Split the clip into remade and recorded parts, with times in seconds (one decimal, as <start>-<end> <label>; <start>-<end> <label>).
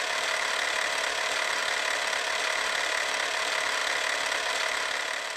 0.0-1.6 remade; 1.6-2.4 recorded; 2.4-3.8 remade; 3.8-4.5 recorded; 4.5-5.4 remade